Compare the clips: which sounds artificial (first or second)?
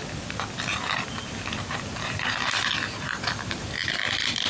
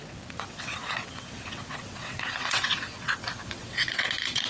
second